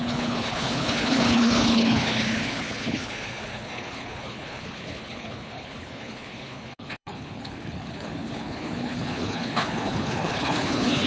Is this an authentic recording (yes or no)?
no